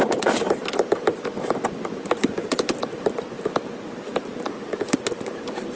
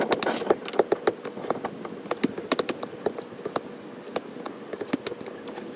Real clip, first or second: second